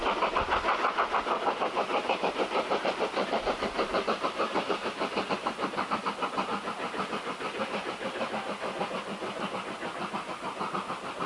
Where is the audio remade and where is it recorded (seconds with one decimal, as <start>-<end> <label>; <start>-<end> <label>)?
0.0-1.6 recorded; 1.6-6.0 remade; 6.0-11.3 recorded